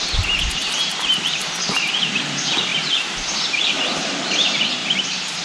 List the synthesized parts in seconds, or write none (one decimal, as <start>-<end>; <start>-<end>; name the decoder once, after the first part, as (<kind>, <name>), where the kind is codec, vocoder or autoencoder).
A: 0.6-2.2 (vocoder, BigVGAN v2); 4.8-5.4